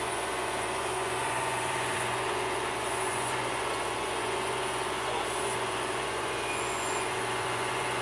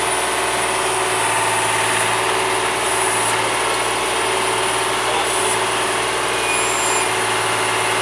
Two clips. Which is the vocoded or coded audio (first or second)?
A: first